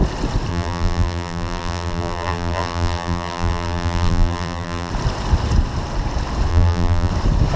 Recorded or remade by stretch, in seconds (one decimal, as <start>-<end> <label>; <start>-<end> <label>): 0.0-0.5 recorded; 0.5-4.9 remade; 4.9-6.5 recorded; 6.5-7.1 remade; 7.1-7.6 recorded